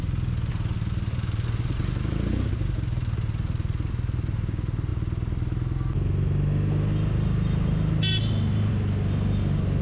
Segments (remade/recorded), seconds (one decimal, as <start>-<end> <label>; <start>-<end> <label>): 0.0-0.5 recorded; 0.5-3.9 remade; 3.9-9.8 recorded